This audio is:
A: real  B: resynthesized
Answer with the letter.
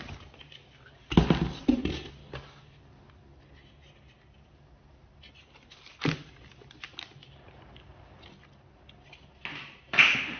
A